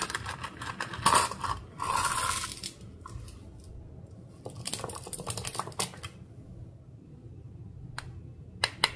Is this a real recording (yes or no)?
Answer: yes